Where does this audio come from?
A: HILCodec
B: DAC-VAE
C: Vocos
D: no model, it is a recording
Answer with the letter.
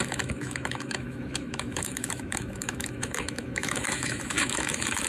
B